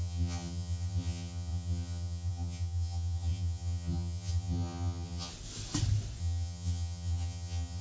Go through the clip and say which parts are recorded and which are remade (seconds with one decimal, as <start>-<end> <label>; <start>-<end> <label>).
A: 0.0-5.3 remade; 5.3-6.2 recorded; 6.2-7.8 remade